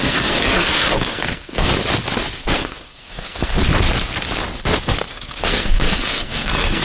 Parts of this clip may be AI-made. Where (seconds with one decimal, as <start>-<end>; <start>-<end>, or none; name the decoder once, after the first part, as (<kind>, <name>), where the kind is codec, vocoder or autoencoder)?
0.0-1.7 (codec, SNAC); 2.4-3.5; 5.1-6.8